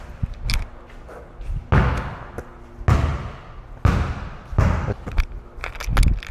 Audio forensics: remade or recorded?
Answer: recorded